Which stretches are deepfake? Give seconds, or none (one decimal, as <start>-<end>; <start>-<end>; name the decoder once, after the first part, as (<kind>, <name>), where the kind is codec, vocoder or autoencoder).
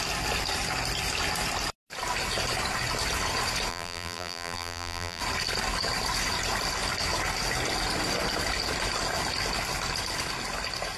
3.7-5.2 (vocoder, BigVGAN v2)